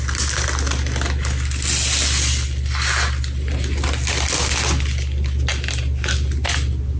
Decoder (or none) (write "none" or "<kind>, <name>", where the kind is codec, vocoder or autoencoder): none